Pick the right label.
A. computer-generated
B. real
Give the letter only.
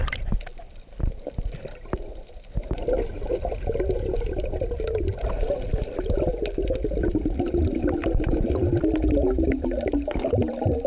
B